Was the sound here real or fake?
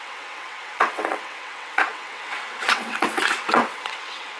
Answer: fake